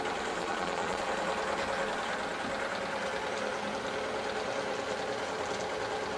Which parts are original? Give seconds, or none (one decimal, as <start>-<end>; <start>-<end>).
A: 0.0-0.4; 1.0-6.2